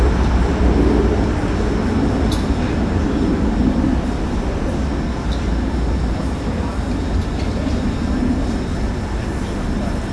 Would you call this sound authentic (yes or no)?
yes